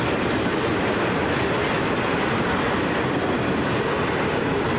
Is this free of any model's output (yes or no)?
yes